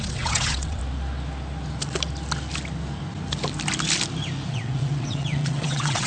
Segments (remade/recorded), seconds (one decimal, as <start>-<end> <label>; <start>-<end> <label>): 0.0-0.8 remade; 0.8-4.5 recorded; 4.5-6.1 remade